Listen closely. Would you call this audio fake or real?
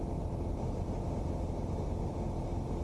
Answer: fake